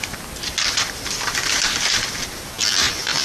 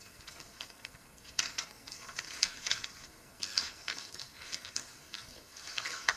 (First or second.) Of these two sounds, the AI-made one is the second